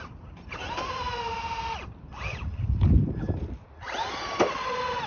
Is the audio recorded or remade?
recorded